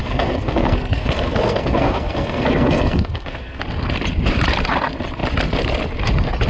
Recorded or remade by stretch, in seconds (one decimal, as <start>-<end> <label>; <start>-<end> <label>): 0.0-3.6 remade; 3.6-6.5 recorded